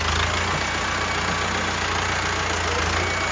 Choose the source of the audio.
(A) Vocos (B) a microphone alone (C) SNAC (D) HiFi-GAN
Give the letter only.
B